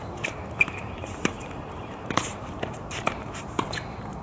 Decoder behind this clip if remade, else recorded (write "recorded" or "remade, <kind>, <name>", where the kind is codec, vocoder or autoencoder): remade, vocoder, BigVGAN v2